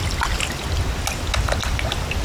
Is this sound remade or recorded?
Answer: recorded